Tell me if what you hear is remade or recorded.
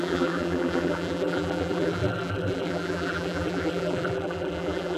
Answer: remade